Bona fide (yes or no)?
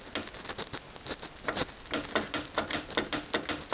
yes